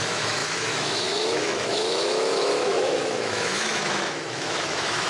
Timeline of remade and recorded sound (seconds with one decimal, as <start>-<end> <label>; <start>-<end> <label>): 0.0-5.1 remade